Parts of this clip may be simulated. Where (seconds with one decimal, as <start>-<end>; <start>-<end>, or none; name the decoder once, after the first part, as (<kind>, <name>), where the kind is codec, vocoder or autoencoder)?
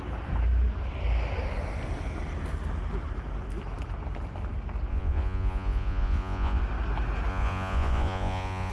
4.9-6.6 (vocoder, Vocos); 7.3-8.7